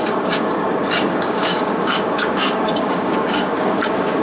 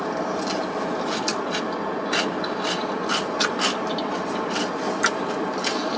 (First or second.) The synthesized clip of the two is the first